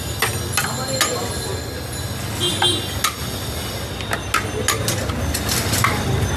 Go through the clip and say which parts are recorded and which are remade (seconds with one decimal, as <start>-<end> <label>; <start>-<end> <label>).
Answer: 0.0-6.4 recorded